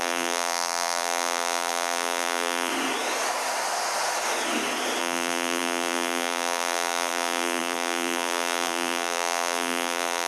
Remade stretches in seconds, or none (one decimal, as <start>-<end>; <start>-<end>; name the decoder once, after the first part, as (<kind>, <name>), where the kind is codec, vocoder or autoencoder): 0.0-2.7 (vocoder, BigVGAN v2); 5.0-10.3